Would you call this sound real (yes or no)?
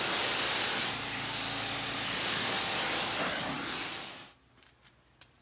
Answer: yes